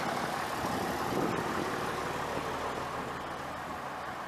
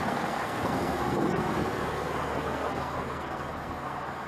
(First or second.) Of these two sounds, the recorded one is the first